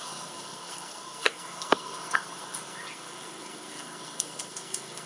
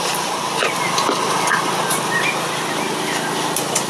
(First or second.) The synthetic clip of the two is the first